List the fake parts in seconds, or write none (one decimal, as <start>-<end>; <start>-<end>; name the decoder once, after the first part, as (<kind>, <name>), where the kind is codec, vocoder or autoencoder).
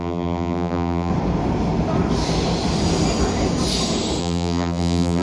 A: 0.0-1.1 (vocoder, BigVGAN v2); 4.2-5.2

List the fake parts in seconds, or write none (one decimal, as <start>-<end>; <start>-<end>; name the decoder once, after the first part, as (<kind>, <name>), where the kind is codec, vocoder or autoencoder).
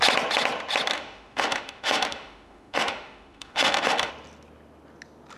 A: 0.9-4.1 (autoencoder, DAC-VAE)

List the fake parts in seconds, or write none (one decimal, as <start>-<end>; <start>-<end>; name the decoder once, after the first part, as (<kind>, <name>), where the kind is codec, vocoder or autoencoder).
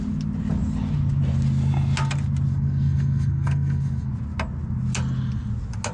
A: 2.5-4.1 (codec, SNAC)